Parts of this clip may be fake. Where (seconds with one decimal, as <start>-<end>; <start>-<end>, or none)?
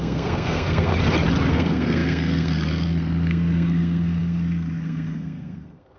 0.0-0.9; 1.5-6.0